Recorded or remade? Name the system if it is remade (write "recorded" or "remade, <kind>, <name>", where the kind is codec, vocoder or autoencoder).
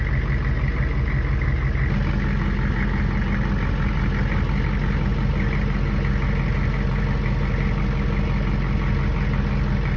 recorded